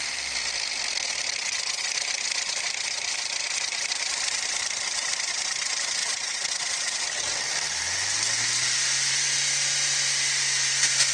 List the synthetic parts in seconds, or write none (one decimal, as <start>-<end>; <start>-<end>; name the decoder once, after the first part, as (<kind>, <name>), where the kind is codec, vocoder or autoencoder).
6.0-7.0 (vocoder, Vocos)